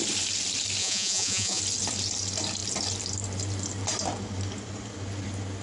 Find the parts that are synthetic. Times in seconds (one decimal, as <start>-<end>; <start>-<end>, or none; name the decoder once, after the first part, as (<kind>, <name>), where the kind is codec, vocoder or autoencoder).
0.8-1.6 (vocoder, Vocos)